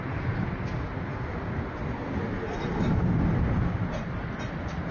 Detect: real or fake real